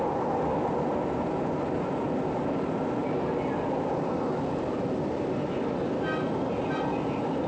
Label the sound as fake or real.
real